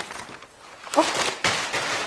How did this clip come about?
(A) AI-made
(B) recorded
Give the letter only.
B